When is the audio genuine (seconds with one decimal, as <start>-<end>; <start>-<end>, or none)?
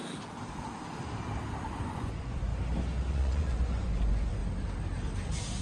0.0-1.8; 2.5-3.1; 4.4-5.6